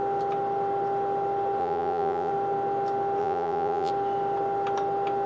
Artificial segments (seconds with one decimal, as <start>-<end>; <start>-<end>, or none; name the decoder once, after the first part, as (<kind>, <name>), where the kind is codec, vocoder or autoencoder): 1.6-2.3 (vocoder, Vocos); 3.2-3.9